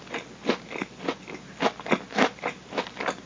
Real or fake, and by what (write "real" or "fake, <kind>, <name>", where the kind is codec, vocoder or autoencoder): real